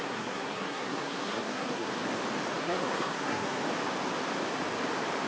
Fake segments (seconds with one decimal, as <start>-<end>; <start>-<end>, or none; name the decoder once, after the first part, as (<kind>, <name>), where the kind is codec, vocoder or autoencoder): 0.0-1.9 (codec, SNAC); 2.6-3.6